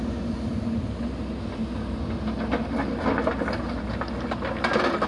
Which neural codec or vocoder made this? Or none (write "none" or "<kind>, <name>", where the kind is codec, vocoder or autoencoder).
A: none